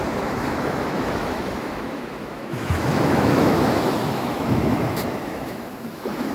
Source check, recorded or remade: remade